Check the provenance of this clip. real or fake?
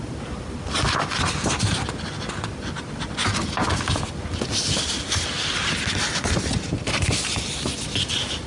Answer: real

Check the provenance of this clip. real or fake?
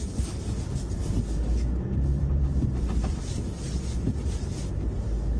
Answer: real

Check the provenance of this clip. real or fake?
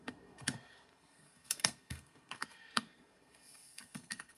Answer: fake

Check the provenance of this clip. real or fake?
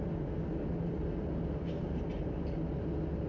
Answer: real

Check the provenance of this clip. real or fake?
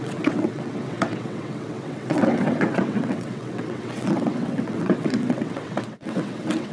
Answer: fake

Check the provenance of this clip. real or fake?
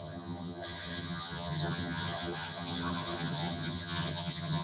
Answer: fake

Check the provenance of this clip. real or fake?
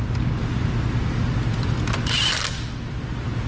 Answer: real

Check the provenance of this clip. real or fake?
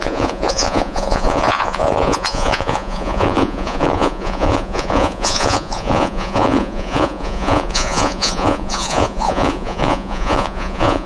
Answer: fake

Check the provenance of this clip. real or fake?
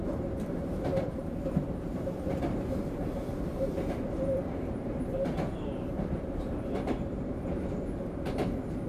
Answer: fake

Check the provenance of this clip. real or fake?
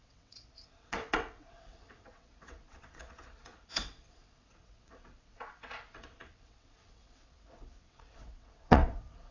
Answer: fake